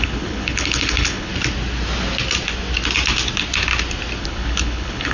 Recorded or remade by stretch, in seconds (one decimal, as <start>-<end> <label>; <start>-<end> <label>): 0.0-1.3 remade; 1.3-4.2 recorded; 4.2-5.1 remade